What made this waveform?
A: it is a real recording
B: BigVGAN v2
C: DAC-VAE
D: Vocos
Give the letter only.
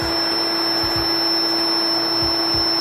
A